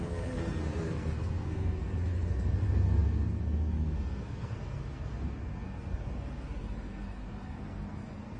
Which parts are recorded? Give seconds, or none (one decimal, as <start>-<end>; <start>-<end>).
none